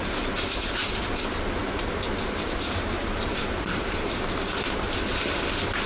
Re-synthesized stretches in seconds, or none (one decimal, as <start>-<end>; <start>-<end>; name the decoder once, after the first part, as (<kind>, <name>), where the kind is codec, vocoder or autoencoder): 1.6-5.1 (vocoder, BigVGAN v2)